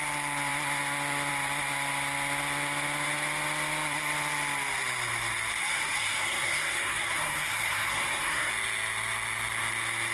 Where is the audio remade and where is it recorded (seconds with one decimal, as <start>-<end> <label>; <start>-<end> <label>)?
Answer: 0.0-5.6 recorded; 5.6-8.5 remade; 8.5-10.1 recorded